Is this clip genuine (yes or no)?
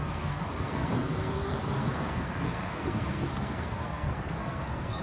no